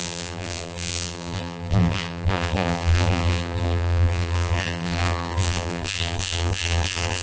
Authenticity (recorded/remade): remade